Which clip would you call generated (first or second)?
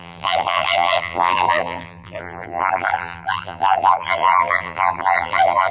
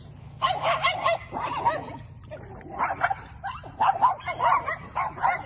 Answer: first